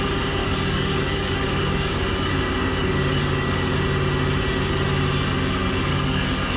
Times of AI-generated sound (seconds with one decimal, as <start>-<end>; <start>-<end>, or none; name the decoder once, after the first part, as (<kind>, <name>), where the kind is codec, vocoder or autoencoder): 0.4-2.3 (codec, DAC); 2.8-3.7; 5.9-6.6